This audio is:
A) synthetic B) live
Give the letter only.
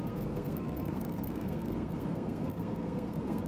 A